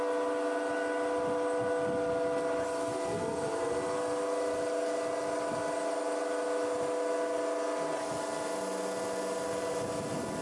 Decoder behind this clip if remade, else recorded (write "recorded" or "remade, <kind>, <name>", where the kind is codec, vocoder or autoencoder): recorded